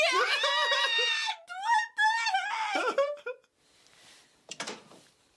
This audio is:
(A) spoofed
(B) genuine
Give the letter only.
B